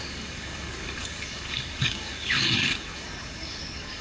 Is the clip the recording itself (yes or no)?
no